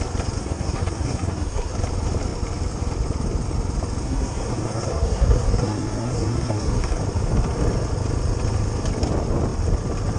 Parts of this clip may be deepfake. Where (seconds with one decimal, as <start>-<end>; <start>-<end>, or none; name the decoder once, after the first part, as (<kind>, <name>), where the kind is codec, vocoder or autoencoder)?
0.4-1.7 (codec, SNAC); 4.0-7.0